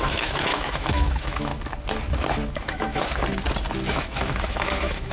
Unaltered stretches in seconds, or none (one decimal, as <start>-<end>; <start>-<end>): 1.5-2.5; 3.0-3.9